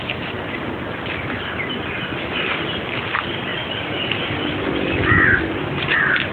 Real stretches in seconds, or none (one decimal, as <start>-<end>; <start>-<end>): 0.0-6.3